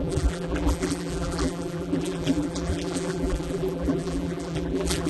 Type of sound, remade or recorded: remade